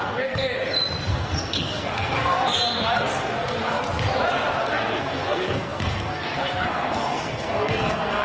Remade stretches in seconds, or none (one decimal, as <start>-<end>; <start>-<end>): 0.0-0.5; 1.1-3.8; 4.6-8.2